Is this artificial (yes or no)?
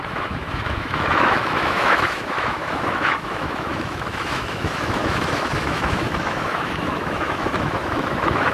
yes